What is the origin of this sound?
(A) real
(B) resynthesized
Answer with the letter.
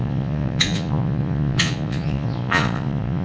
B